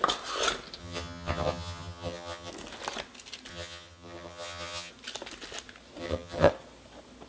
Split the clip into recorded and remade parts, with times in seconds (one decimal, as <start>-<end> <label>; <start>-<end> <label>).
0.0-0.8 recorded; 0.8-2.5 remade; 2.5-3.5 recorded; 3.5-4.9 remade; 4.9-6.0 recorded; 6.0-6.5 remade; 6.5-7.3 recorded